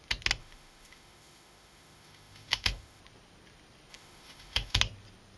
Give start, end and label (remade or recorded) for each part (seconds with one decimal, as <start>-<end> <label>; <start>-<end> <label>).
0.0-0.4 recorded; 0.4-3.0 remade; 3.0-3.9 recorded; 3.9-4.8 remade; 4.8-5.4 recorded